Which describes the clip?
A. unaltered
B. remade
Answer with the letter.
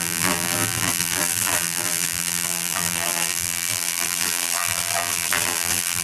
B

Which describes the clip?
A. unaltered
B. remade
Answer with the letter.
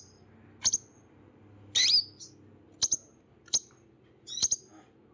A